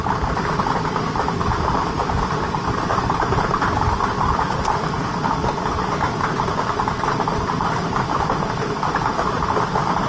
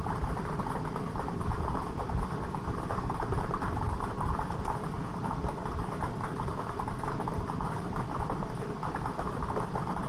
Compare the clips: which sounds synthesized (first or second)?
first